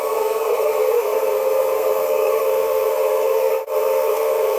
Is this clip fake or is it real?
fake